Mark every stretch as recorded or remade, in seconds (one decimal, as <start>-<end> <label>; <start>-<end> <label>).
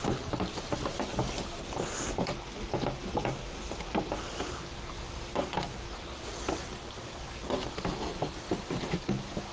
0.0-9.5 recorded